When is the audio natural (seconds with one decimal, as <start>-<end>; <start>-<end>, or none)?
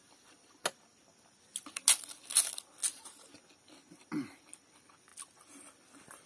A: 0.0-6.3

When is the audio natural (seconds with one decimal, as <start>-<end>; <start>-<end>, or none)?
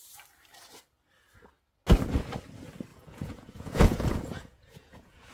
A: 0.0-2.9